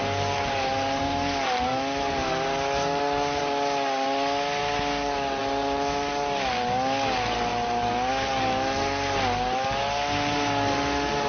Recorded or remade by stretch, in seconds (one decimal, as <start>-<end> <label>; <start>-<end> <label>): 0.0-11.3 recorded